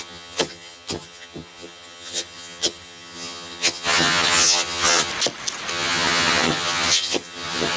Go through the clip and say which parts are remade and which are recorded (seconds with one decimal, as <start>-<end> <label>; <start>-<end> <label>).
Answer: 0.0-5.1 remade; 5.1-5.7 recorded; 5.7-7.8 remade